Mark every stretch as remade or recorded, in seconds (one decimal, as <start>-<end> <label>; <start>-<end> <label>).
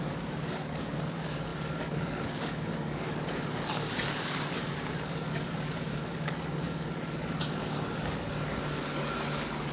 0.0-9.7 remade